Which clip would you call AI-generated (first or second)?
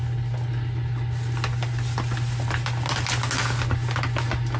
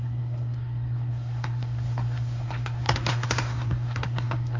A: second